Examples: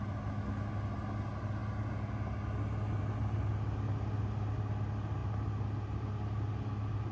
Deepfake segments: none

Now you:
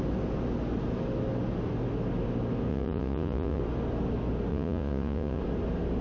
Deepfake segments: 2.7-3.6 (vocoder, Vocos); 4.5-5.4

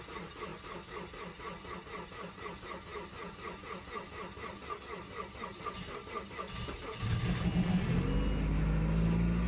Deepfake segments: none

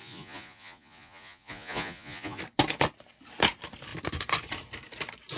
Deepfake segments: 0.0-2.4 (vocoder, Vocos)

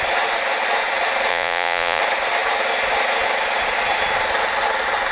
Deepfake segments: 1.3-2.0 (vocoder, Vocos)

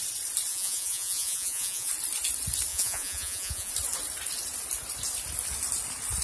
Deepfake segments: 0.5-1.9 (vocoder, Vocos); 2.7-3.7

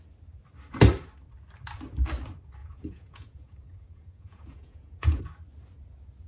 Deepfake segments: 2.6-5.2 (vocoder, Vocos)